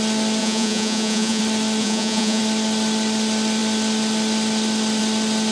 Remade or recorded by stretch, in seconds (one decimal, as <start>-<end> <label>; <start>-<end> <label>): 0.0-0.4 recorded; 0.4-1.4 remade; 1.4-1.8 recorded; 1.8-2.4 remade; 2.4-5.5 recorded